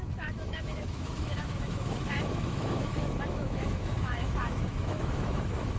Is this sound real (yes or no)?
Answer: no